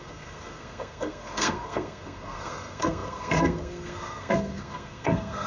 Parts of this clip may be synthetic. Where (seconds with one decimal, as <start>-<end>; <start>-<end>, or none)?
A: 0.0-5.5